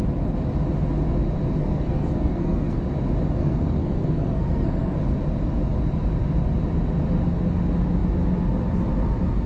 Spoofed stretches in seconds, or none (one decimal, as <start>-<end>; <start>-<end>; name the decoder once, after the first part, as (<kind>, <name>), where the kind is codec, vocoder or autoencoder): 1.6-2.8 (codec, SNAC); 3.4-5.0